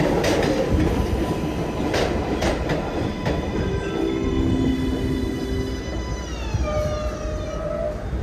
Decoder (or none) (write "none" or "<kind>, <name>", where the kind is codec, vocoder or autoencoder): none